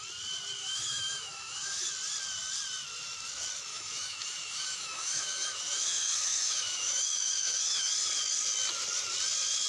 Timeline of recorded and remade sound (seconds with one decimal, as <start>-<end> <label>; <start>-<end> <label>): 0.0-0.6 recorded; 0.6-1.9 remade; 1.9-3.7 recorded; 3.7-7.9 remade; 7.9-9.7 recorded